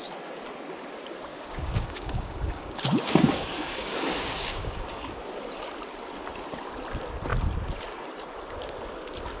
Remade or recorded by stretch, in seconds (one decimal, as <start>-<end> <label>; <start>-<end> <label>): 0.0-1.3 recorded; 1.3-5.2 remade; 5.2-9.4 recorded